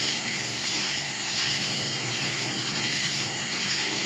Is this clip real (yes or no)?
no